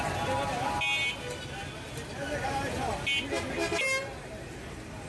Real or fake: real